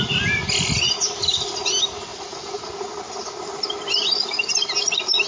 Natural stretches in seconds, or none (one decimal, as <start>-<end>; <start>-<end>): 0.0-2.1; 2.7-5.3